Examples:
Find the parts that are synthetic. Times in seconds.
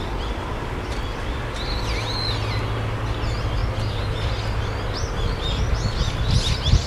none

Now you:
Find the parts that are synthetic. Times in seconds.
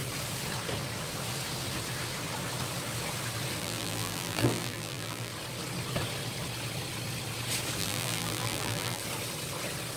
3.6-5.3 (vocoder, BigVGAN v2); 7.8-9.0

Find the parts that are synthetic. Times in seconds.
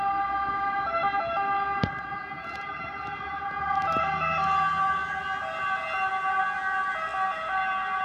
1.8-4.0 (vocoder, BigVGAN v2)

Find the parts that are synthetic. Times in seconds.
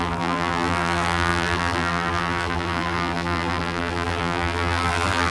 0.0-5.3 (vocoder, BigVGAN v2)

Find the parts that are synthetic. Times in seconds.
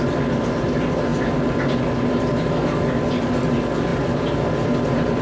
3.9-5.2 (vocoder, BigVGAN v2)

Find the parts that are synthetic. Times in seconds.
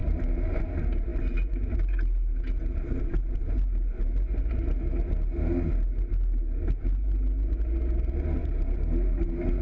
0.0-0.6 (vocoder, BigVGAN v2); 8.4-9.6